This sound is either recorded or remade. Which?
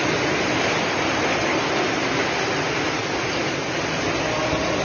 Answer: recorded